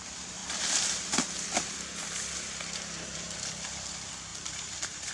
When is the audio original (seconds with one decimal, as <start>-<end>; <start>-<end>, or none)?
0.4-1.7